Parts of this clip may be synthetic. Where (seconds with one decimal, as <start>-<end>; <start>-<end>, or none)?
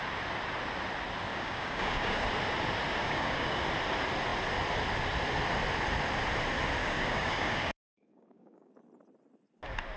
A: 1.3-2.3; 3.0-3.6; 6.8-8.7